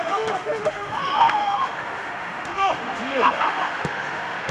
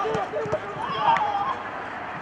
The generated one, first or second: first